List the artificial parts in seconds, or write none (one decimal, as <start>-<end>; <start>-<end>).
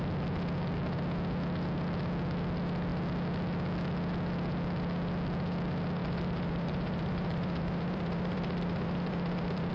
6.0-9.7